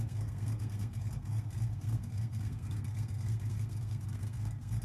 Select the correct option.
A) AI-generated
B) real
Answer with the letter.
A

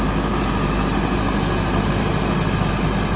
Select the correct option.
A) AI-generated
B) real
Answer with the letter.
B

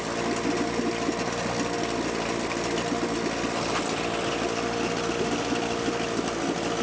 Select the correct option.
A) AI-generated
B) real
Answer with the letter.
B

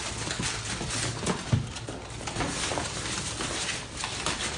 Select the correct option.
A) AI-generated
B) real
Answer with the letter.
B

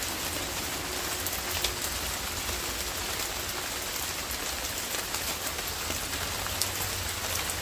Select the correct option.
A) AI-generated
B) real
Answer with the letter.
B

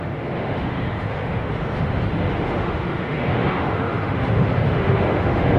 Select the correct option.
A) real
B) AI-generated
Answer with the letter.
B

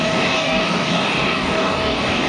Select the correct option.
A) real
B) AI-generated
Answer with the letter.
B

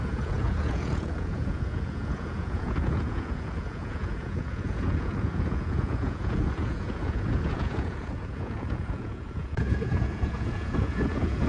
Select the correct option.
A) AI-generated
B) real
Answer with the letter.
A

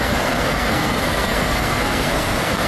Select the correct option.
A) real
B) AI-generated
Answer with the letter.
B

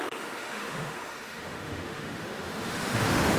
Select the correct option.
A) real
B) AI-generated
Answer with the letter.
B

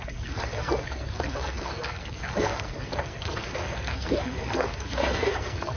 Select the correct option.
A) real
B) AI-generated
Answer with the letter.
B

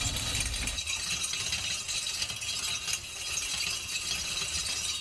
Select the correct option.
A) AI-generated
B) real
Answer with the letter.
B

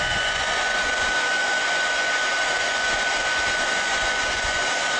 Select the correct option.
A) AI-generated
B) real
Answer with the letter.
A